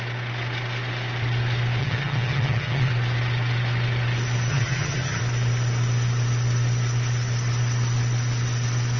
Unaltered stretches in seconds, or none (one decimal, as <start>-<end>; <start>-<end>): 0.0-1.8; 2.9-4.5; 5.2-9.0